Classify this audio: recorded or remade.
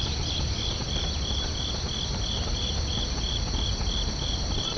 remade